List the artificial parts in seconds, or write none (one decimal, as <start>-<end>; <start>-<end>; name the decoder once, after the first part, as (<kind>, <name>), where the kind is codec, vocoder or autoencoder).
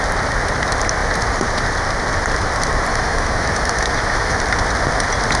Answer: 2.9-4.4 (autoencoder, DAC-VAE)